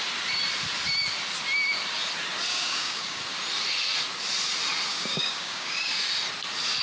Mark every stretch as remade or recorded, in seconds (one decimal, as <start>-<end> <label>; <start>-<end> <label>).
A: 0.0-2.5 recorded; 2.5-3.2 remade; 3.2-4.9 recorded; 4.9-6.0 remade; 6.0-6.8 recorded